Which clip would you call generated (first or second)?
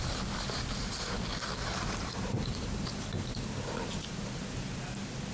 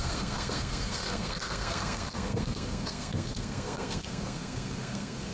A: second